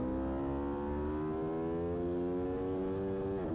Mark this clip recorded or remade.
recorded